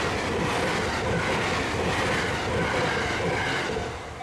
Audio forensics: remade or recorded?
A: recorded